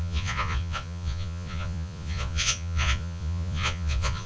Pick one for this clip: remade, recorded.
remade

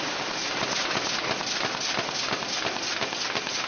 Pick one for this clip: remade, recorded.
recorded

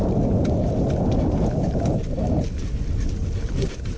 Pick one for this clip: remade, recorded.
recorded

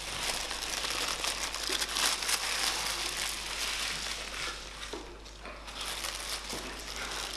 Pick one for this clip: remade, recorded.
recorded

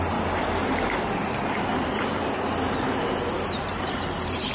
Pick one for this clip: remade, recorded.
recorded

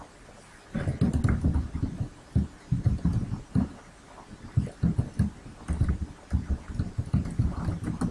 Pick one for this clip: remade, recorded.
recorded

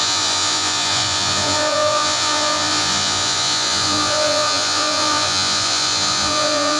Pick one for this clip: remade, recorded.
remade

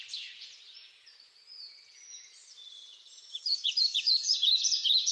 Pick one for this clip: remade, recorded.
remade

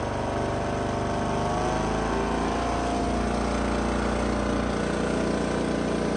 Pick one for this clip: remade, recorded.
recorded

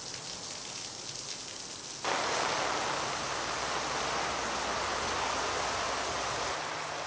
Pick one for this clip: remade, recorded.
recorded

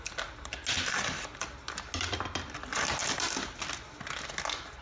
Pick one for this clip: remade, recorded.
recorded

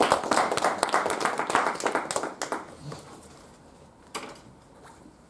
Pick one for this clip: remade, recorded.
recorded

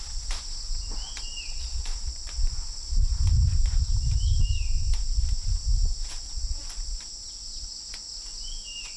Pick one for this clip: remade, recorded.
remade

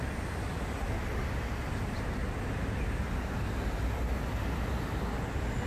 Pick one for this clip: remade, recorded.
recorded